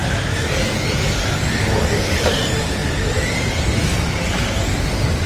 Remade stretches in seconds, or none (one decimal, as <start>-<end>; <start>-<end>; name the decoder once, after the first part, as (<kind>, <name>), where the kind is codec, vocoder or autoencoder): 1.8-2.3 (vocoder, BigVGAN v2); 2.8-3.5

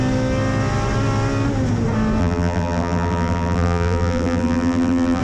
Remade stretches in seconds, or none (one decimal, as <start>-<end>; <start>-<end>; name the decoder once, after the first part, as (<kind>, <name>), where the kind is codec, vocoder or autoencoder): 2.2-5.2 (vocoder, BigVGAN v2)

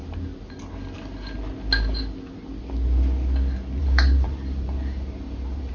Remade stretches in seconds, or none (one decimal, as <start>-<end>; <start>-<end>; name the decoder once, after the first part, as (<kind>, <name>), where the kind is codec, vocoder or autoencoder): 3.8-5.7 (vocoder, BigVGAN v2)